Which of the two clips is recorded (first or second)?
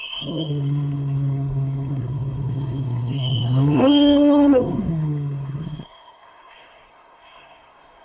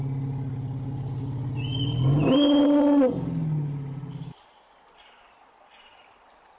second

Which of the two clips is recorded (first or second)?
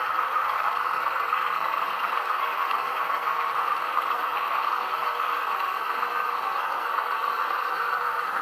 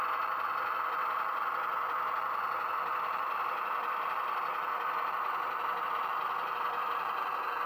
second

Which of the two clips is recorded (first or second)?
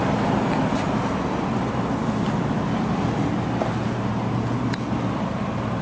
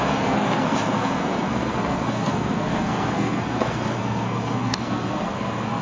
first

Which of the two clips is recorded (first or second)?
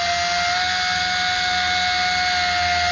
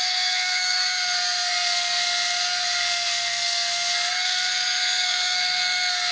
first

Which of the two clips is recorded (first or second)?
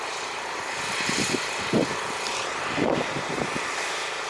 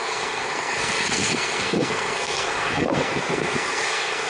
first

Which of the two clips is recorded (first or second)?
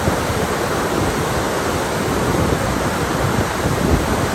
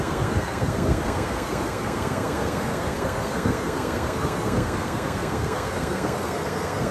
first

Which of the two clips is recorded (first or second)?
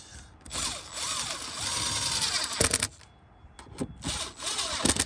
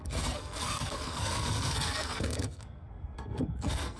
first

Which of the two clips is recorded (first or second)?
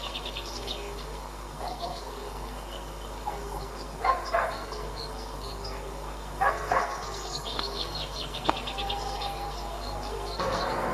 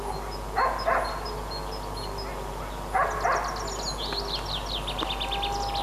second